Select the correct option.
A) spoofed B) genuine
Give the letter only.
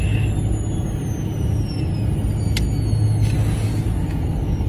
B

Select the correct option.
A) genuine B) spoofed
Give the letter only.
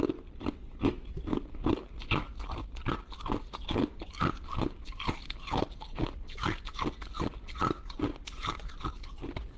B